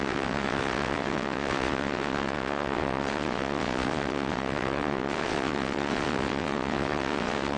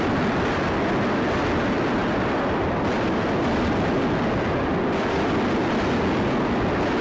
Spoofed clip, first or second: first